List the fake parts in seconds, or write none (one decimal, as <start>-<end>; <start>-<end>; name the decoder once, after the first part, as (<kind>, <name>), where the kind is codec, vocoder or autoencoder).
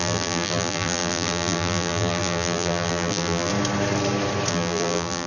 0.0-3.5 (vocoder, BigVGAN v2); 4.5-5.3